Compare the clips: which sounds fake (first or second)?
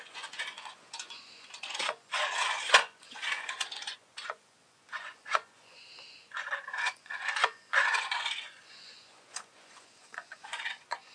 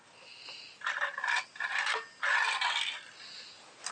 first